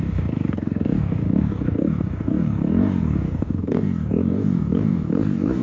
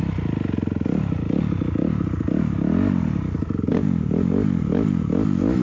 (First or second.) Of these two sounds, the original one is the second